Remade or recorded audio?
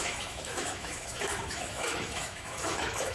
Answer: remade